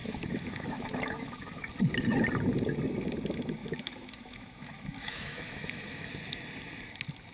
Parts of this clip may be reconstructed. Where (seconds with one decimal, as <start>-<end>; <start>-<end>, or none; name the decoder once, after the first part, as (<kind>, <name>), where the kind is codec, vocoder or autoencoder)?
0.0-1.7 (autoencoder, DAC-VAE); 3.6-6.1